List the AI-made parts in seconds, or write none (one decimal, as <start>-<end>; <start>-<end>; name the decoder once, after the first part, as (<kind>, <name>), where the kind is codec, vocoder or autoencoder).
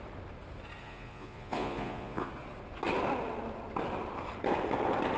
0.8-2.3 (vocoder, Vocos)